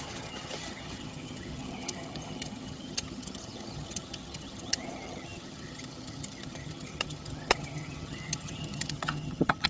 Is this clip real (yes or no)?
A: no